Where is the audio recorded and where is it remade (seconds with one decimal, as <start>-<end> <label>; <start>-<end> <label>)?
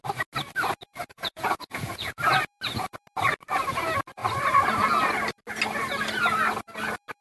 0.0-1.0 recorded; 1.0-2.2 remade; 2.2-7.2 recorded